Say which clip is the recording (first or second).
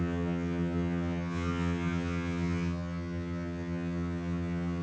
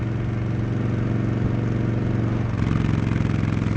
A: second